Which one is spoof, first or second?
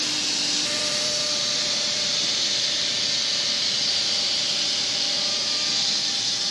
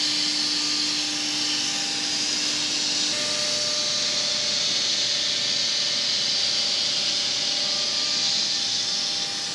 first